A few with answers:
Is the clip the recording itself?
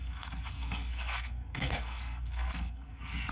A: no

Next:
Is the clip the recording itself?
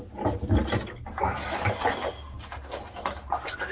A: yes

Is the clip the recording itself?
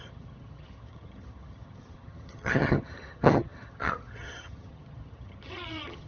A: no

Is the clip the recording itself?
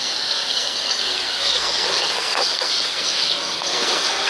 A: no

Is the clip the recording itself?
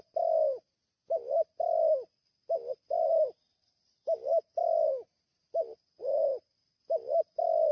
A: yes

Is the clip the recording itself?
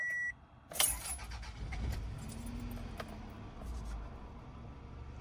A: yes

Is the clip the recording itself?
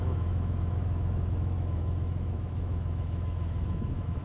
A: no